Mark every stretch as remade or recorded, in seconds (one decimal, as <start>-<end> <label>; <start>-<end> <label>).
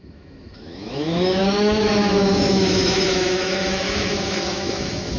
0.0-5.2 remade